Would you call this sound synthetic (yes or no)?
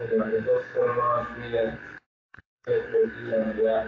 yes